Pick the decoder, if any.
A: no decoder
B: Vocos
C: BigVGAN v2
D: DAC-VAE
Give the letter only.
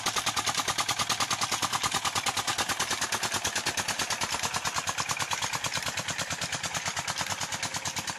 C